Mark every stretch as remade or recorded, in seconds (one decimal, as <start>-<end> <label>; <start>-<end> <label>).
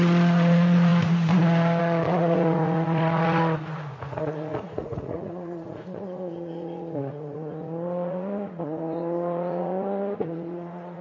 0.0-0.9 remade; 0.9-1.8 recorded; 1.8-11.0 remade